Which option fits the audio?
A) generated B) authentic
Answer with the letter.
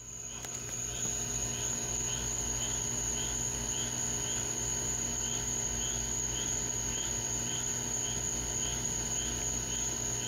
B